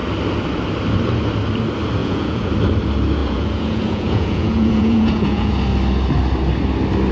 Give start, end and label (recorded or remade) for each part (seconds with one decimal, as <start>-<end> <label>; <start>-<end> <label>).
0.0-2.0 recorded; 2.0-2.5 remade; 2.5-3.2 recorded; 3.2-5.5 remade; 5.5-7.1 recorded